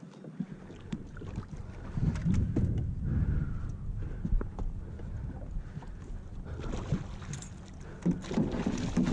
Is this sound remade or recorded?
recorded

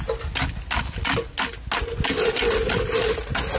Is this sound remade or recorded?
recorded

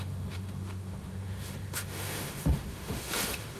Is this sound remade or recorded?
remade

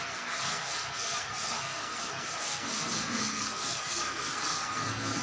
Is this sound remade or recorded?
remade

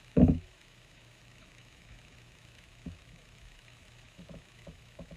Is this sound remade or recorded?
remade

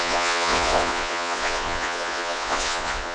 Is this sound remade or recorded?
remade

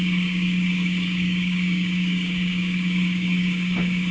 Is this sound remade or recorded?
remade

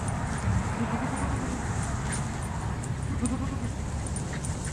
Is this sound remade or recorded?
recorded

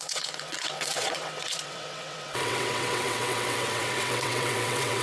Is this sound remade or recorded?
remade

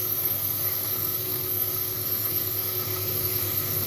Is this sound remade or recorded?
remade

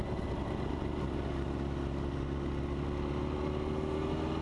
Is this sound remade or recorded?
recorded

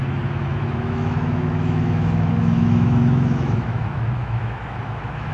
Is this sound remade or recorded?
remade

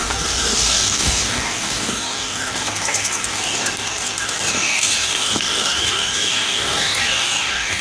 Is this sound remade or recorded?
remade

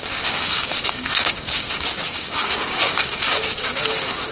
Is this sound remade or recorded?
remade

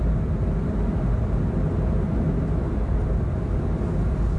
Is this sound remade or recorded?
remade